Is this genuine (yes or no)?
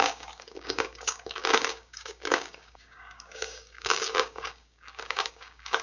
no